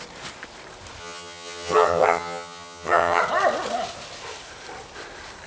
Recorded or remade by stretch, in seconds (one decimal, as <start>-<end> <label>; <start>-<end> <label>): 0.0-1.0 recorded; 1.0-3.2 remade; 3.2-5.5 recorded